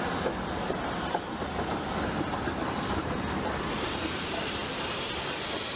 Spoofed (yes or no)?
no